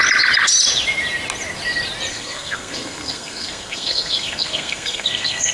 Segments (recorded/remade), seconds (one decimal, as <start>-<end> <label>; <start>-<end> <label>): 0.0-2.1 recorded; 2.1-5.5 remade